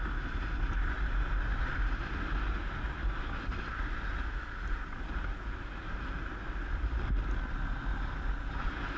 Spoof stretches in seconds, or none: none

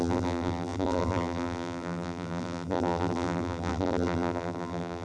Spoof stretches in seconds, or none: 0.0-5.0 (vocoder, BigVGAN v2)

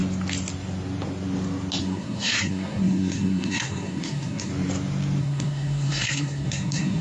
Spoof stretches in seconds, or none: 1.8-4.5 (codec, SNAC); 5.2-7.0